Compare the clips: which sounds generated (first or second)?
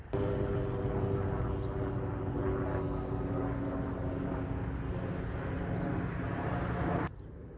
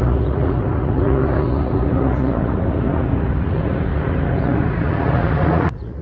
second